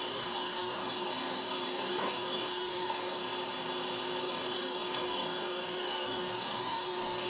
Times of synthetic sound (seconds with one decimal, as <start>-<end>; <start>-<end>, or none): 0.0-3.2; 4.2-7.3